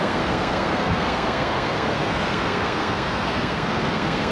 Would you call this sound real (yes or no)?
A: no